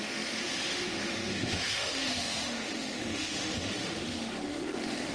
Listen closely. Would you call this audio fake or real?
fake